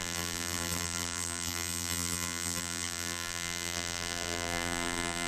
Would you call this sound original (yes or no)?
no